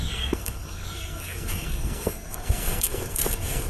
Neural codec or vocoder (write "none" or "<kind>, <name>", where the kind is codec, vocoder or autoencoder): codec, SNAC